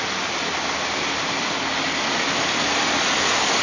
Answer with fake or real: real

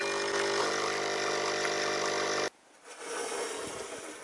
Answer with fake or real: real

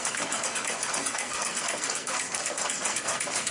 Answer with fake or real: fake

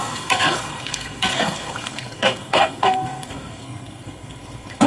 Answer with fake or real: fake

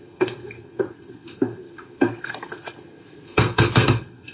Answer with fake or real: fake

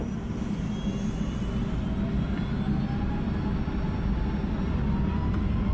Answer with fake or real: real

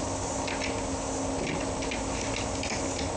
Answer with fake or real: real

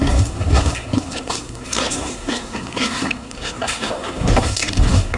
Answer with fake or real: fake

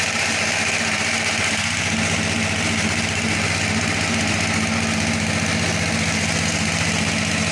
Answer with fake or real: real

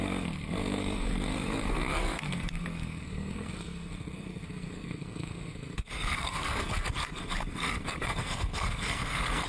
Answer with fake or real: fake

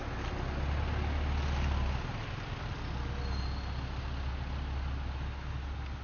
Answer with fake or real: real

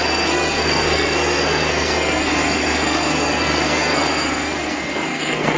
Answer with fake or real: fake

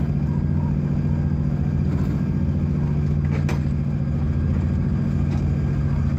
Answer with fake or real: real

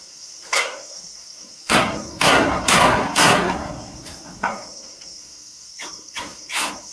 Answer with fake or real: fake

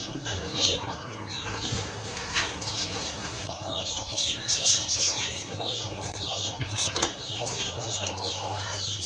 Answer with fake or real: fake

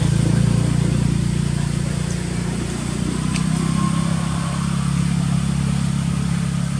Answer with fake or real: real